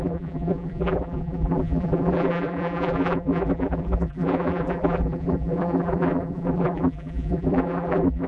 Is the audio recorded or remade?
remade